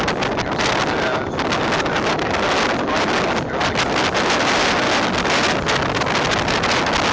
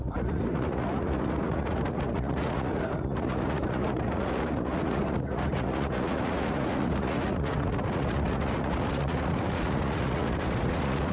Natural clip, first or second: first